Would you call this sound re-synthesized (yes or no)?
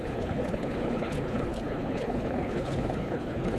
yes